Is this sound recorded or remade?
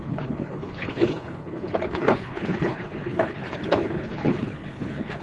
remade